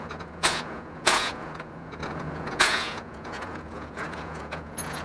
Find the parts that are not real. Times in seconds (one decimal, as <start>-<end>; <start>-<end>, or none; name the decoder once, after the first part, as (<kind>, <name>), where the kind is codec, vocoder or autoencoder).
0.0-5.0 (vocoder, Vocos)